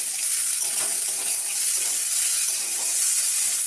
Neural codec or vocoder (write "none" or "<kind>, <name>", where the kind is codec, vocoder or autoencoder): none